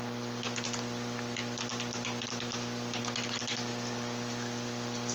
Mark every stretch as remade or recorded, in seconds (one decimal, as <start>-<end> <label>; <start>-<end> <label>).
0.0-1.7 recorded; 1.7-3.0 remade; 3.0-3.7 recorded; 3.7-5.1 remade